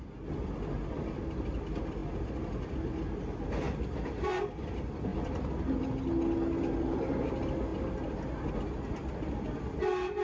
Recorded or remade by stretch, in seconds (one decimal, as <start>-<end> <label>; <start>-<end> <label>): 0.0-10.2 recorded